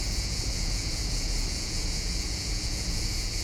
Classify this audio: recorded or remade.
remade